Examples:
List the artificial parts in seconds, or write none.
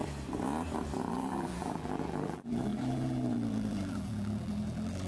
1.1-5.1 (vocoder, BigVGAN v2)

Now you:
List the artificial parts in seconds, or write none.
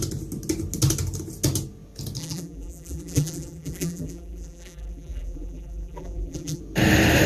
2.2-6.6 (vocoder, BigVGAN v2)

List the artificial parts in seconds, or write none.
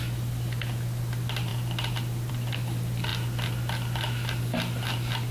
none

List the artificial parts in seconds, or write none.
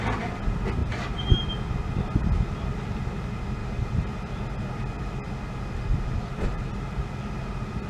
0.8-1.4 (vocoder, BigVGAN v2); 3.6-4.3; 5.9-6.7